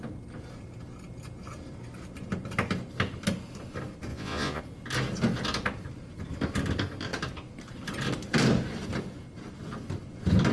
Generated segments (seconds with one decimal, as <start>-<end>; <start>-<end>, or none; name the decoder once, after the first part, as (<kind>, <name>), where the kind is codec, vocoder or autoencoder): 4.1-4.6 (vocoder, Vocos)